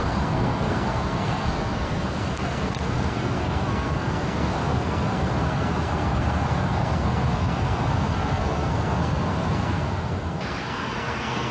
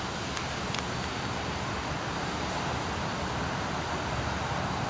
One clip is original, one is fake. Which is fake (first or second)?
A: first